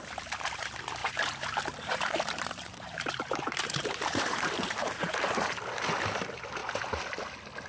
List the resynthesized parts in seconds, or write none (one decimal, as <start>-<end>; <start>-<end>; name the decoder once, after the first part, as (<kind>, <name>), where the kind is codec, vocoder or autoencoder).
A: 1.0-5.5 (vocoder, BigVGAN v2)

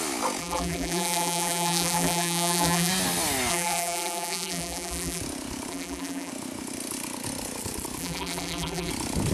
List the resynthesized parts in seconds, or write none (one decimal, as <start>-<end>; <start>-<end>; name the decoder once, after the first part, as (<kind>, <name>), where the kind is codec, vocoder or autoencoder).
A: 0.4-2.9 (vocoder, BigVGAN v2); 3.5-5.2; 5.7-6.3; 8.0-8.9

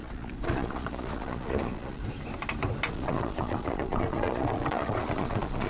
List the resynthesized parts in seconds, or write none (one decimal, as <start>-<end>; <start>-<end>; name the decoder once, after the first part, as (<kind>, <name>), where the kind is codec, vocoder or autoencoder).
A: 0.0-2.0 (vocoder, Vocos); 2.9-5.7

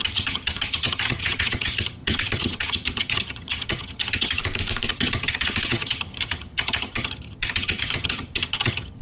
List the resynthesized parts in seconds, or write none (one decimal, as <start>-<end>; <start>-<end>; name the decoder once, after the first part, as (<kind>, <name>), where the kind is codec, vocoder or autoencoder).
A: 0.0-4.4 (vocoder, HiFi-GAN); 4.9-9.0

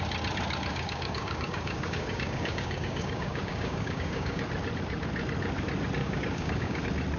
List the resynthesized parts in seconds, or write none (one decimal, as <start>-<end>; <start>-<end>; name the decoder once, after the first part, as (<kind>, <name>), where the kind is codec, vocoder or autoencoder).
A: 0.7-4.4 (codec, DAC); 6.0-6.8

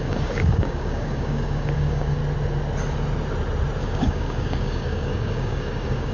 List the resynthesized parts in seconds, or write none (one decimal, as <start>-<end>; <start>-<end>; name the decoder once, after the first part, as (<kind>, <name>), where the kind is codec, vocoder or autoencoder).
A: 0.0-2.2 (codec, DAC); 3.8-6.1

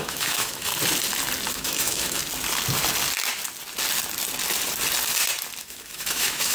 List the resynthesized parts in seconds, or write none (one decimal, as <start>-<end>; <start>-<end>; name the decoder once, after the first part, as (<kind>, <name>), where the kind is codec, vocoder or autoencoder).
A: 0.0-0.7 (autoencoder, DAC-VAE); 1.5-2.2; 5.6-6.5